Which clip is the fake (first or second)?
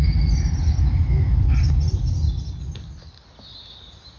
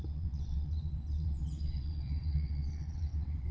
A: second